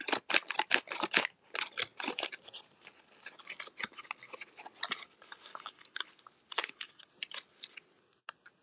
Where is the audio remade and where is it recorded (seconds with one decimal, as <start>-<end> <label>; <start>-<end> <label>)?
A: 0.0-5.5 recorded; 5.5-6.1 remade; 6.1-6.6 recorded; 6.6-7.1 remade; 7.1-8.6 recorded